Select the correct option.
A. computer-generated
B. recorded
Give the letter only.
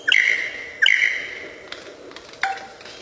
B